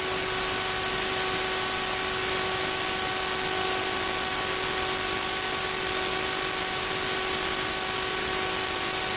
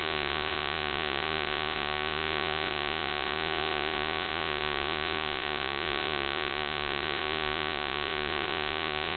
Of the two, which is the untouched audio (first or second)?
first